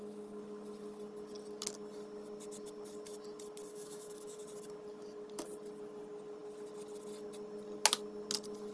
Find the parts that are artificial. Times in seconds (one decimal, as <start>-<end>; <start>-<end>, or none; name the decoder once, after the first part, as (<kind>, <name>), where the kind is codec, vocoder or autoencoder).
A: 3.7-4.4 (autoencoder, DAC-VAE)